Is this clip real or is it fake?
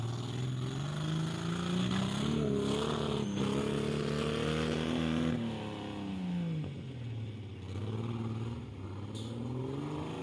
real